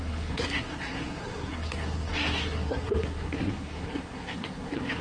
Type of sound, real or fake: fake